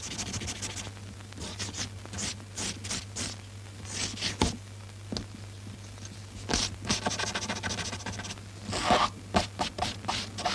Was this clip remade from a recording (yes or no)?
no